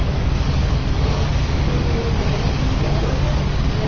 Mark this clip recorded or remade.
remade